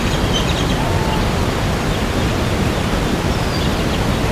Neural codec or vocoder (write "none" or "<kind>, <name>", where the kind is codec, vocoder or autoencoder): none